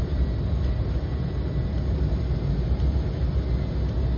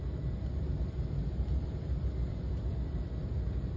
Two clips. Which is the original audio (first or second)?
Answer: first